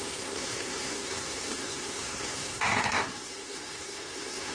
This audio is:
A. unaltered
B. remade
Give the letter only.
B